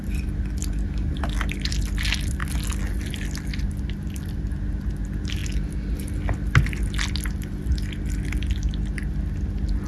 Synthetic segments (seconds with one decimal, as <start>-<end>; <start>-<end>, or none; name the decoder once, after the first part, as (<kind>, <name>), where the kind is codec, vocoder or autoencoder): none